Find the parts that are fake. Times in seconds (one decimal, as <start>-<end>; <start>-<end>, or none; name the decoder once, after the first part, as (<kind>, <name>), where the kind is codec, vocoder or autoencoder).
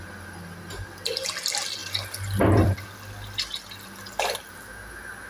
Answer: none